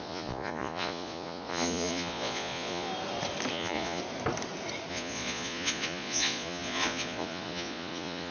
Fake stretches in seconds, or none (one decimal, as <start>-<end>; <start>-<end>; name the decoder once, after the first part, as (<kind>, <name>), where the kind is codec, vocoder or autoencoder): 0.0-2.9 (vocoder, Vocos); 3.5-4.0; 4.9-8.3